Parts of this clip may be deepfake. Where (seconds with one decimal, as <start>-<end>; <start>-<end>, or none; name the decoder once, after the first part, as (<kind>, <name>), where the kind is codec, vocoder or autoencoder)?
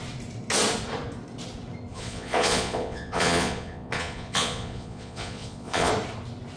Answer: 1.9-5.9 (vocoder, Vocos)